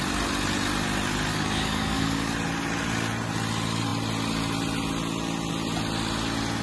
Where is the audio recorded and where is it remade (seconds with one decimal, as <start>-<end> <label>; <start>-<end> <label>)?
0.0-1.3 recorded; 1.3-2.3 remade; 2.3-6.6 recorded